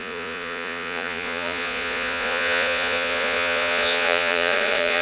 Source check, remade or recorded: remade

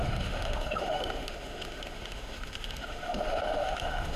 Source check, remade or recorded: remade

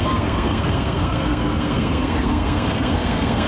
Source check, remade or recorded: remade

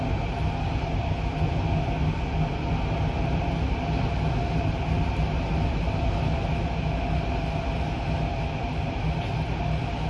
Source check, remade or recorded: recorded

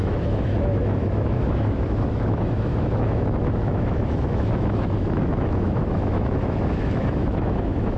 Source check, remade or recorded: remade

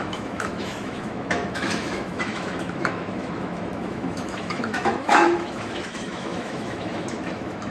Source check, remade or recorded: remade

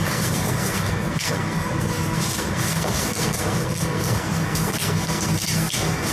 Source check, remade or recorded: remade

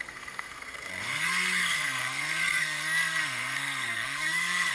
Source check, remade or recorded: remade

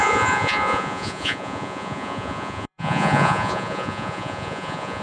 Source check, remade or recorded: remade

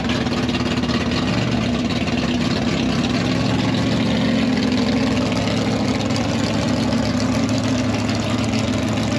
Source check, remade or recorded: recorded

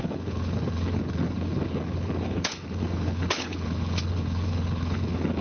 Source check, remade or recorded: remade